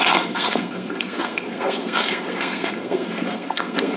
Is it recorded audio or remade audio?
remade